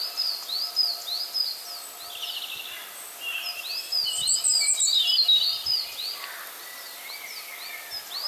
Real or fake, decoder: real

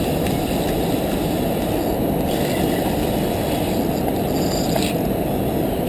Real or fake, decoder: real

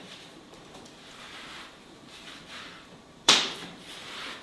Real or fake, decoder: fake, vocoder, BigVGAN v2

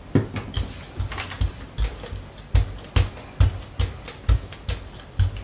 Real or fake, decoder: real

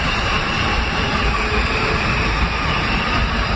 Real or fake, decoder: fake, vocoder, BigVGAN v2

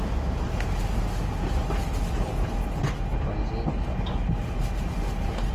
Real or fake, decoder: real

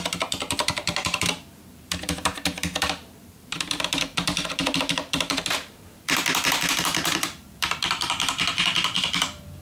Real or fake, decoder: fake, vocoder, BigVGAN v2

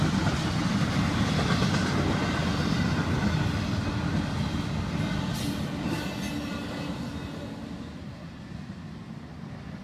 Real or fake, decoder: real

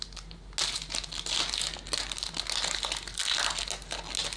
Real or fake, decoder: real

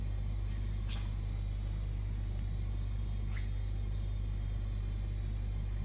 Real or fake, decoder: real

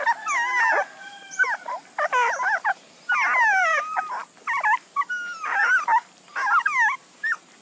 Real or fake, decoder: real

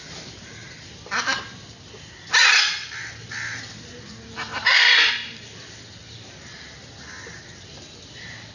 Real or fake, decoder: fake, vocoder, BigVGAN v2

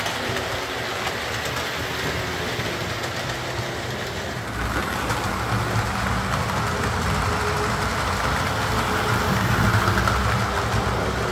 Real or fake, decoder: real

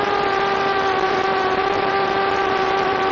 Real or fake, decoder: fake, vocoder, BigVGAN v2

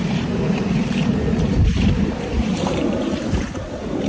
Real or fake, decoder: fake, vocoder, BigVGAN v2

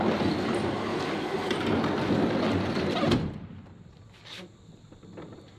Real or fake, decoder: fake, vocoder, BigVGAN v2